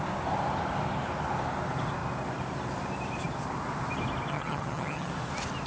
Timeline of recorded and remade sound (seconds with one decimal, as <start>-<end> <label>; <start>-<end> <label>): 0.0-4.3 recorded; 4.3-5.1 remade; 5.1-5.7 recorded

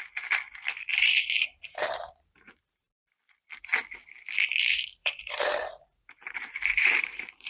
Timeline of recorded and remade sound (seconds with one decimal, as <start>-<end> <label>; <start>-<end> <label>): 0.0-0.9 recorded; 0.9-3.2 remade; 3.2-5.0 recorded; 5.0-7.5 remade

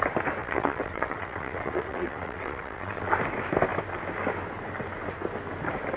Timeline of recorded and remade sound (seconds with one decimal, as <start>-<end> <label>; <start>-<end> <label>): 0.0-0.4 recorded; 0.4-3.1 remade; 3.1-6.0 recorded

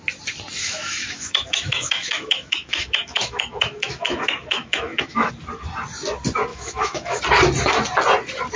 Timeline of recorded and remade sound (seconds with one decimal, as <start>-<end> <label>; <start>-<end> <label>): 0.0-0.6 recorded; 0.6-5.3 remade; 5.3-6.5 recorded; 6.5-7.2 remade; 7.2-8.6 recorded

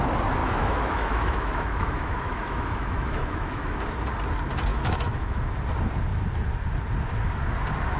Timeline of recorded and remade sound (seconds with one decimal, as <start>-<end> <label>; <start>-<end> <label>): 0.0-0.4 recorded; 0.4-3.8 remade; 3.8-4.7 recorded; 4.7-5.6 remade; 5.6-8.0 recorded

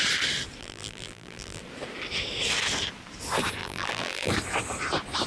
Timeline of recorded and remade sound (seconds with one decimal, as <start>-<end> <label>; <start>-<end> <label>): 0.0-0.6 recorded; 0.6-1.6 remade; 1.6-3.6 recorded; 3.6-4.3 remade; 4.3-5.3 recorded

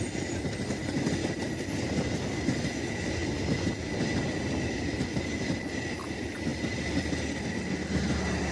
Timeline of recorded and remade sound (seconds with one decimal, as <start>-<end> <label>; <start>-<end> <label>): 0.0-8.5 recorded

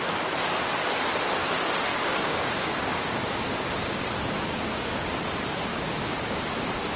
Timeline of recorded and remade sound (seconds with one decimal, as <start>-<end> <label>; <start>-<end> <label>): 0.0-1.9 recorded; 1.9-5.0 remade; 5.0-5.7 recorded; 5.7-6.4 remade; 6.4-7.0 recorded